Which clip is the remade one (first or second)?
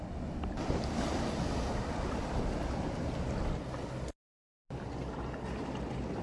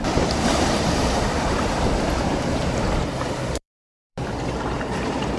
second